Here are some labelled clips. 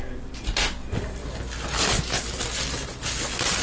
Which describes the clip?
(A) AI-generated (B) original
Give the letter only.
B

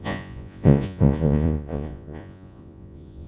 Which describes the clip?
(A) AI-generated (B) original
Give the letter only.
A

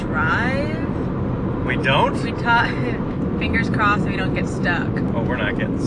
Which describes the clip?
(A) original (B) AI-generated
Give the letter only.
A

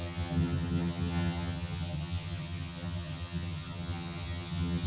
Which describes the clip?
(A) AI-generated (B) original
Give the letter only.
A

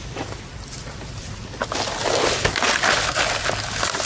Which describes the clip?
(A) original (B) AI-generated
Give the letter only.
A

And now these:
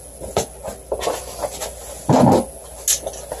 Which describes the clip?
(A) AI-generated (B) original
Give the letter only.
B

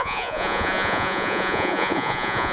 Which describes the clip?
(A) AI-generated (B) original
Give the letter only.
A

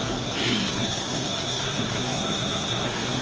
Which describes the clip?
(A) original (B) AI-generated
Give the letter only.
B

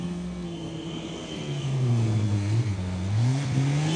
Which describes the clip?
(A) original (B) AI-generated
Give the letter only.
B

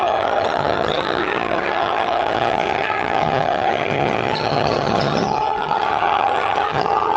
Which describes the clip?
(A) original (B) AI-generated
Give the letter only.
B